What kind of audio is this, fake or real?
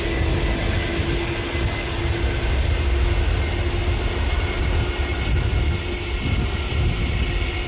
real